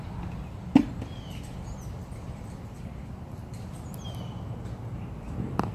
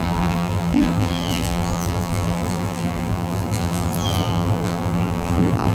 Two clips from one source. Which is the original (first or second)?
first